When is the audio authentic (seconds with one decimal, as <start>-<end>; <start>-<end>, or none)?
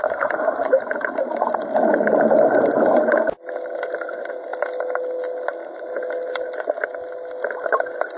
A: 0.0-8.2